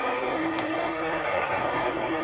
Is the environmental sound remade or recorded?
remade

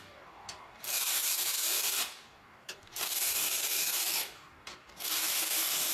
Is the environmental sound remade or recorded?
remade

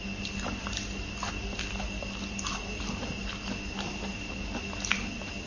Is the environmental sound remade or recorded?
recorded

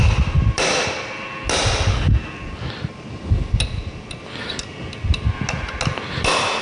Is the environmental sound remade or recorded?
recorded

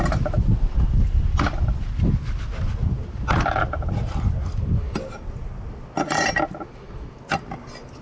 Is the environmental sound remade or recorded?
recorded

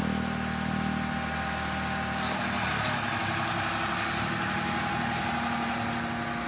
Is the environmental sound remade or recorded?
recorded